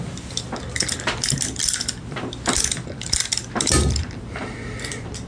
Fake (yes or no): yes